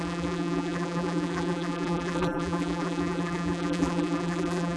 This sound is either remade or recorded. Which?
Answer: remade